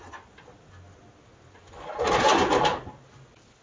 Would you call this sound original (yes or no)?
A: yes